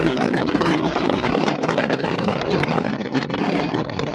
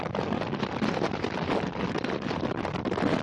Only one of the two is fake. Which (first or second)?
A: first